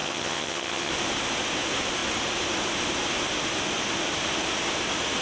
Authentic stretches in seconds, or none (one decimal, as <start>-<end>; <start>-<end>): 0.9-5.2